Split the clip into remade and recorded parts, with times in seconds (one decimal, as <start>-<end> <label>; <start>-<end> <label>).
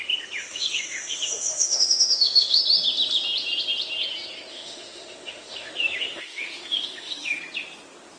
0.0-0.4 recorded; 0.4-2.6 remade; 2.6-4.5 recorded; 4.5-7.4 remade; 7.4-8.2 recorded